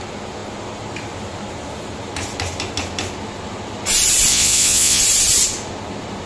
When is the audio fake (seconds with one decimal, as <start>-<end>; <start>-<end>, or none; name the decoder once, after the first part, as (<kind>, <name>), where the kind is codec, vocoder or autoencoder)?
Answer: 4.3-5.0 (vocoder, Vocos)